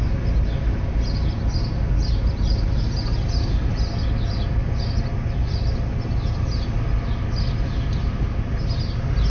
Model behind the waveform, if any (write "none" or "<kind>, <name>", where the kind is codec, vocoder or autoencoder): none